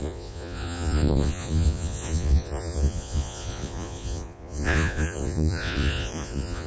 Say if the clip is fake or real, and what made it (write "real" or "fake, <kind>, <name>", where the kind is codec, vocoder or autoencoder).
fake, vocoder, Vocos